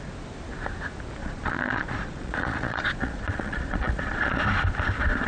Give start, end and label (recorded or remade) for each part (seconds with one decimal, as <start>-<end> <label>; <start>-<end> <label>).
0.0-1.2 recorded; 1.2-4.4 remade; 4.4-5.3 recorded